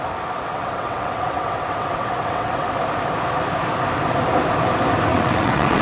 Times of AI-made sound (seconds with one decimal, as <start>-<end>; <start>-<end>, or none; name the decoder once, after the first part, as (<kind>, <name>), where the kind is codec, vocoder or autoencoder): 0.5-2.8 (vocoder, WaveNeXt); 5.1-5.8